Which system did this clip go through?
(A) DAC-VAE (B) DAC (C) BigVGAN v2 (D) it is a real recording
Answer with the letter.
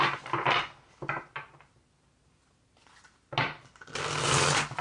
D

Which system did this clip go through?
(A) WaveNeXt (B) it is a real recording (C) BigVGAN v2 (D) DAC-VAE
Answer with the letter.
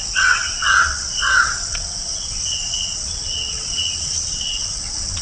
A